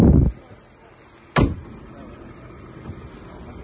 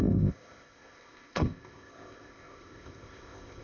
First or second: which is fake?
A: second